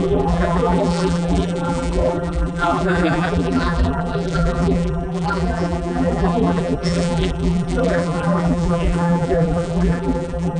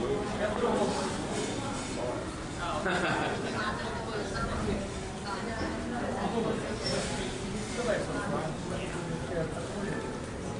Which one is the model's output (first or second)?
first